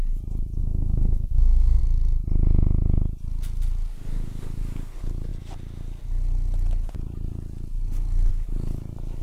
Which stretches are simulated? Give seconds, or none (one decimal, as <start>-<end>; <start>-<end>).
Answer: 0.6-1.8